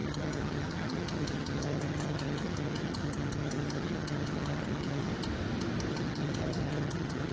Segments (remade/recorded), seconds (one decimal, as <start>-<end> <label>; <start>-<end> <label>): 0.0-5.1 remade; 5.1-5.9 recorded; 5.9-7.3 remade